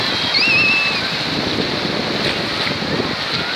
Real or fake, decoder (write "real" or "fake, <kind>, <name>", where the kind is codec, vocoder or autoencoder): real